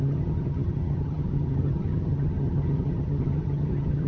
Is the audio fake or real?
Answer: fake